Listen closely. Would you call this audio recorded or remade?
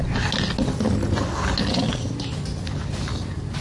recorded